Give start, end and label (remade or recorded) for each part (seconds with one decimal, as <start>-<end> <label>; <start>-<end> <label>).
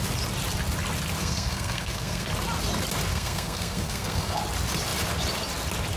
0.0-1.2 recorded; 1.2-2.3 remade; 2.3-3.1 recorded; 3.1-4.4 remade; 4.4-6.0 recorded